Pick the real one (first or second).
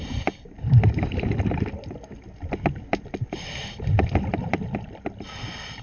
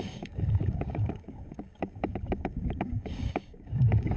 first